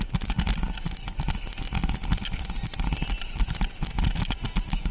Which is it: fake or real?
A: real